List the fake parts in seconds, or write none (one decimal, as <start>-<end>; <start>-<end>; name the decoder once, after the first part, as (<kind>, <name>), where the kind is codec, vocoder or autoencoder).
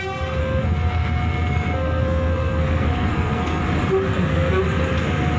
0.4-3.6 (codec, SNAC); 4.1-4.6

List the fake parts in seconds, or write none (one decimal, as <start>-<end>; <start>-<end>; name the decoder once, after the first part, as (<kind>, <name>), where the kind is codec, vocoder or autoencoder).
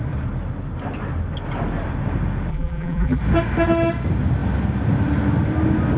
2.5-3.2 (vocoder, BigVGAN v2)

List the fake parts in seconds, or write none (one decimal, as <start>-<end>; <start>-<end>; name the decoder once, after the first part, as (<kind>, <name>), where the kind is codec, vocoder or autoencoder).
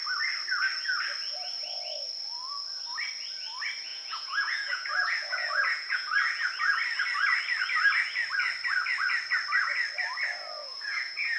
3.9-6.4 (vocoder, Vocos); 10.6-11.4